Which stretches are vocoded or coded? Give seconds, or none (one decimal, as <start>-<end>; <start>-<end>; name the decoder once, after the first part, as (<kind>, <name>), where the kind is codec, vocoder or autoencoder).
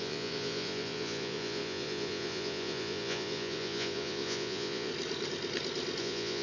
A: 0.0-4.9 (vocoder, Vocos); 6.0-6.4